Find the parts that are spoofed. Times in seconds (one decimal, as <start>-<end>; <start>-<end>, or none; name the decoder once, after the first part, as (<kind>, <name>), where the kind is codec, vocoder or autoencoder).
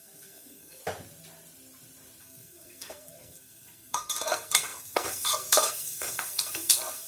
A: 0.0-0.8 (codec, SNAC); 2.2-7.1